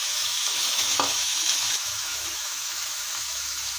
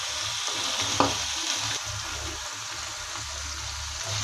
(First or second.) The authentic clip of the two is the second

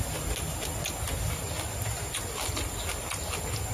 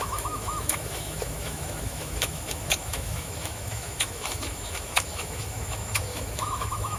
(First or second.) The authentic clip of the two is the first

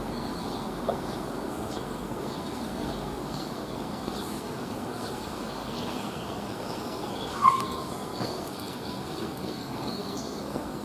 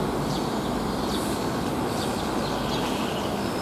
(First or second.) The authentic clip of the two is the second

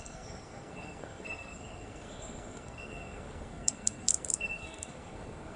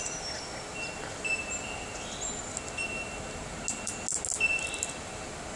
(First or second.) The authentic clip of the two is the second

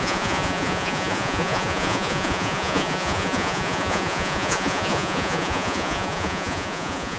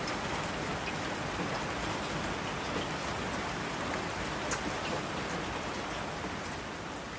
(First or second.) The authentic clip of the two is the second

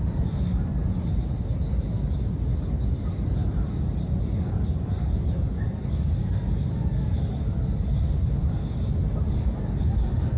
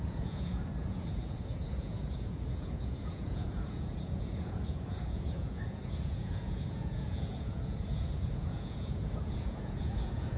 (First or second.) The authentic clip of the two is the first